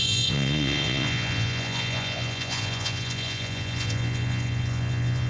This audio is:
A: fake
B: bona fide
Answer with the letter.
A